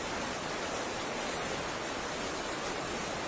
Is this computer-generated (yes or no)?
no